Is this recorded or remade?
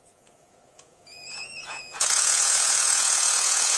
remade